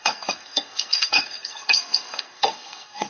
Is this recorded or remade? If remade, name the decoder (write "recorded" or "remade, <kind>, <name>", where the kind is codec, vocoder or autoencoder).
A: remade, codec, SNAC